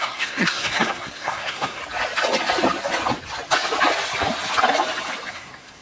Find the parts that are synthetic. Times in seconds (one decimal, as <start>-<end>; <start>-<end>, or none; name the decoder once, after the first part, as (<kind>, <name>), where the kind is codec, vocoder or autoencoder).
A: 0.0-1.8 (codec, SNAC); 5.3-5.8